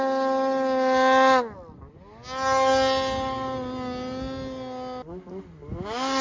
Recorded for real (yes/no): yes